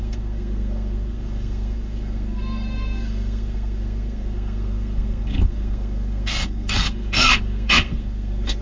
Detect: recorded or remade remade